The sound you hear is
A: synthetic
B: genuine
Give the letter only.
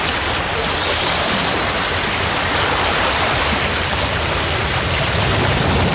B